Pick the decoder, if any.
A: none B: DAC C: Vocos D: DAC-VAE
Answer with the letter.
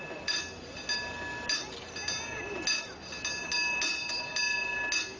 A